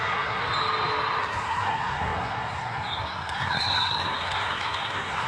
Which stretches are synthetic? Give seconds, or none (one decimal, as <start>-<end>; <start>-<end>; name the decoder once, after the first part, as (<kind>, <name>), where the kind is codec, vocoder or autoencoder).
0.0-0.4 (codec, SNAC); 1.2-5.3

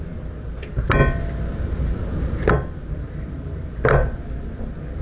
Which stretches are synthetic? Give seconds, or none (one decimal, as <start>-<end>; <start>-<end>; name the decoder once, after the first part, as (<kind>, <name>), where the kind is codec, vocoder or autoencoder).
none

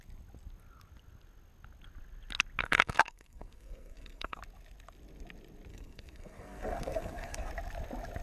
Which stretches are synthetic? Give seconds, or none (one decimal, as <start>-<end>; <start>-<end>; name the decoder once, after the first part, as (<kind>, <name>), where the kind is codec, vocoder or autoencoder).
2.6-4.4 (codec, SNAC); 5.7-7.5

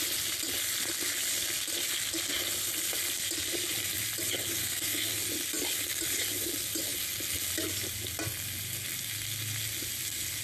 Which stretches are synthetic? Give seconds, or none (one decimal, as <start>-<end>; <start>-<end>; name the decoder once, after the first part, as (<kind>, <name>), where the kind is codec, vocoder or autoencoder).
4.6-5.1 (codec, SNAC)